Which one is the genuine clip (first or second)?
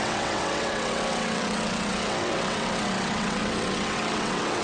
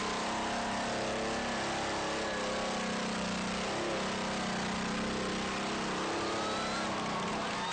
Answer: second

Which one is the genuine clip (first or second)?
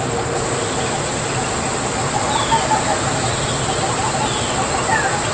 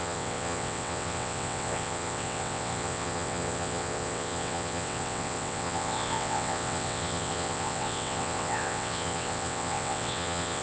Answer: first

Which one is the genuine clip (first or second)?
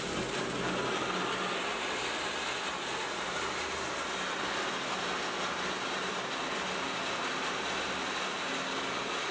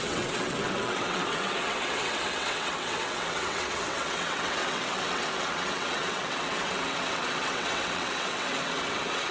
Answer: first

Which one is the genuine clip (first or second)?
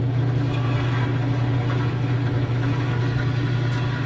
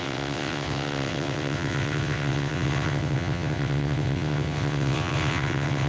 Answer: first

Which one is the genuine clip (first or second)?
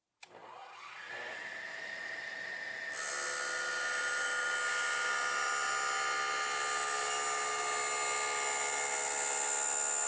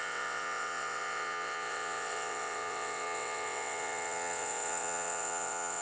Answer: first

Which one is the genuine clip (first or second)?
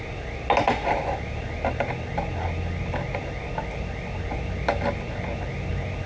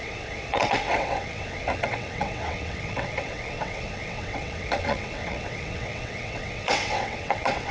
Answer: first